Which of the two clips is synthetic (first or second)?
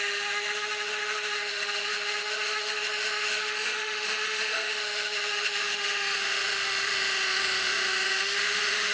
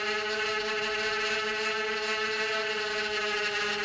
first